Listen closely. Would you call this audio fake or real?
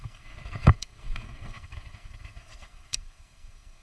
fake